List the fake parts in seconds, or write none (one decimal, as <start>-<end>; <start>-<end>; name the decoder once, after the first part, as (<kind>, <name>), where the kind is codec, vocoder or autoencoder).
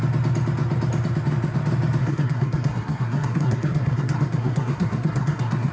2.0-5.7 (codec, SNAC)